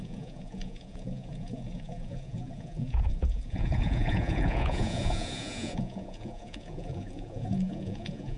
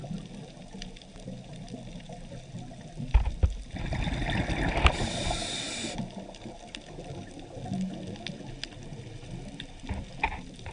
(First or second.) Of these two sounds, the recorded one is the second